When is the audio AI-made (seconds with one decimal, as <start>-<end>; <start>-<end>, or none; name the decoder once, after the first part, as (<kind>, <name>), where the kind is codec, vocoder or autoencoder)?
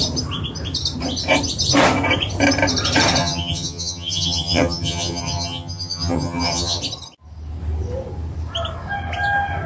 3.2-6.8 (vocoder, HiFi-GAN)